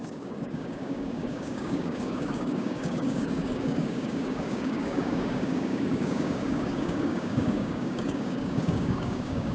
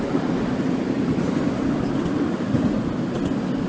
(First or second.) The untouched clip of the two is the second